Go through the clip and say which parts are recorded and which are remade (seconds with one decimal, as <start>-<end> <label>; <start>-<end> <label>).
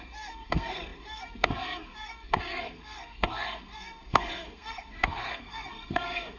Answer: 0.0-6.4 remade